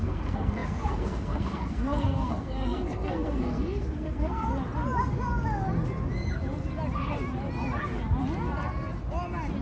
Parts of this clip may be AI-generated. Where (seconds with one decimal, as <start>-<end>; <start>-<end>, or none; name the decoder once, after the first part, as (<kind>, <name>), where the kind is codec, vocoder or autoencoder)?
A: 0.0-4.5 (codec, SNAC)